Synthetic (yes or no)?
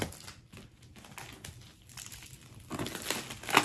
no